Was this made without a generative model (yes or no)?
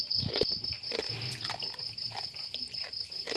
yes